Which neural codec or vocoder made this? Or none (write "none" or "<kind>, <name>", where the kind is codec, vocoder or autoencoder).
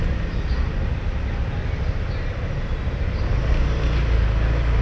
none